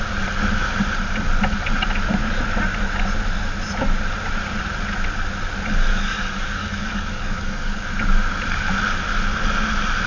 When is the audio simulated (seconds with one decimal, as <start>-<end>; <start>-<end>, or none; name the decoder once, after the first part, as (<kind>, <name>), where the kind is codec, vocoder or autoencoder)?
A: 5.9-7.9 (codec, DAC)